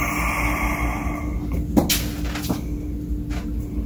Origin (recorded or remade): recorded